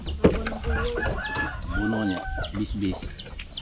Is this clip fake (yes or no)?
no